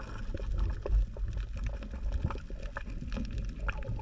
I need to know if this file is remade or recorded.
recorded